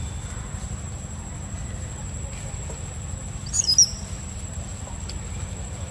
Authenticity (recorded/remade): recorded